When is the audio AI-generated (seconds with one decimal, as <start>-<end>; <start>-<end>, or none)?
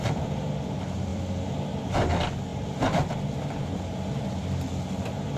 none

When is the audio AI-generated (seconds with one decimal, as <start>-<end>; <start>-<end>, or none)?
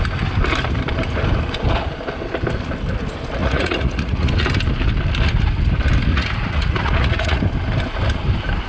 3.4-4.3; 6.1-7.4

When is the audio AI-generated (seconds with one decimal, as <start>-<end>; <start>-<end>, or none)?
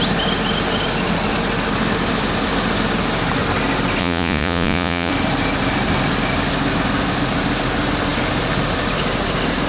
4.0-5.1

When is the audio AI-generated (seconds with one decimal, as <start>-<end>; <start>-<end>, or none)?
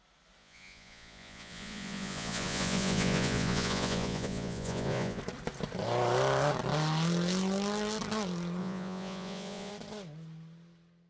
0.4-5.2; 8.6-9.7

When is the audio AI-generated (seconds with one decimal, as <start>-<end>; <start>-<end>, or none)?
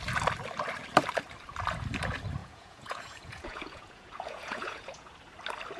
2.4-5.1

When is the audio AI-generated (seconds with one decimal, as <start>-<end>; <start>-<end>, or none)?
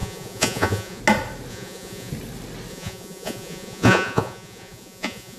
0.0-1.0; 1.5-2.1; 2.7-5.4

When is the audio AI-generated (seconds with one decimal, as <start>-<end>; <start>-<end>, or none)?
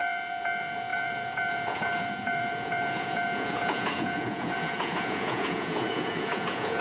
0.0-6.8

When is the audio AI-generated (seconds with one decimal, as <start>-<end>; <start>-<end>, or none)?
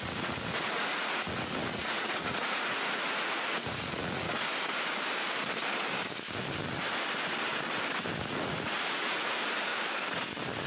0.0-4.5; 8.2-9.7